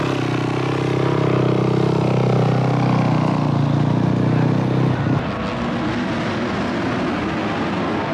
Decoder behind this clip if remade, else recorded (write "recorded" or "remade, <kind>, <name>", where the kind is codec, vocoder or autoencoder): recorded